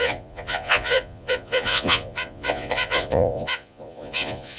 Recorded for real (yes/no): no